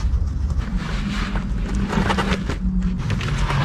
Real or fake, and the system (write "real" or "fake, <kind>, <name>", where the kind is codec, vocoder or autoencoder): real